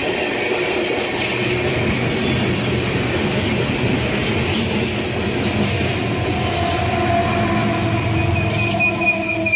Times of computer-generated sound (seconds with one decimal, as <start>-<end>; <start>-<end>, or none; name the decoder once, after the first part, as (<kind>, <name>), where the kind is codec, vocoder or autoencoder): none